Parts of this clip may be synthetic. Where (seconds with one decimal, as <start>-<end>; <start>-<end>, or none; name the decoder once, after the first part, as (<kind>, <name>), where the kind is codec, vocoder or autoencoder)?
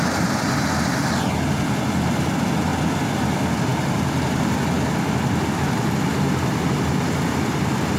3.7-4.4 (vocoder, BigVGAN v2); 6.1-7.1